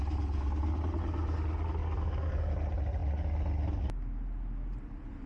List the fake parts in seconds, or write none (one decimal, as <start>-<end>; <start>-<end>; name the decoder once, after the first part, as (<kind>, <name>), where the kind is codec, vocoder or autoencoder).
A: 1.8-2.5 (codec, DAC)

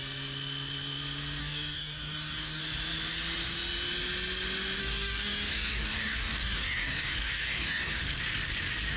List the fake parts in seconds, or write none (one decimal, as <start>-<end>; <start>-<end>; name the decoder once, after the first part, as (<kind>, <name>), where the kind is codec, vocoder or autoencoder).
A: 1.4-2.6 (codec, DAC); 4.8-8.0

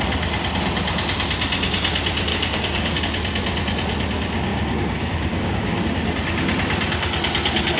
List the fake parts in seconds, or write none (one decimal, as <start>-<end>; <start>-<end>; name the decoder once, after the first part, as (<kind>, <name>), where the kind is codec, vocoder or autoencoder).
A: 2.3-3.0 (codec, DAC); 4.5-5.8

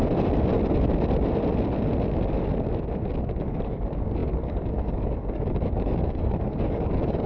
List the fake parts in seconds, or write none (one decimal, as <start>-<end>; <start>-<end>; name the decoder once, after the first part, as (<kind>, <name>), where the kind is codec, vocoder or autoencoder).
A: 3.1-7.3 (codec, DAC)

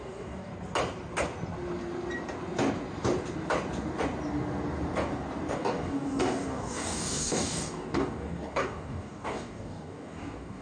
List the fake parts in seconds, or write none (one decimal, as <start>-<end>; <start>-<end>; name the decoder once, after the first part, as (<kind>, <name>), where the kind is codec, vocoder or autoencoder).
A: 0.0-0.5 (codec, DAC); 5.5-10.6